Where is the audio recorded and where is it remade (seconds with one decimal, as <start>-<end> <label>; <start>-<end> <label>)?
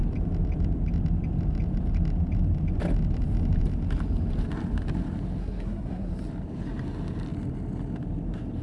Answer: 0.0-5.4 recorded; 5.4-6.1 remade; 6.1-8.6 recorded